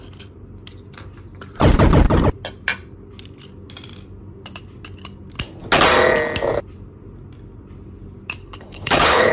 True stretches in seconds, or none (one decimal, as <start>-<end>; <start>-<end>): 0.0-8.4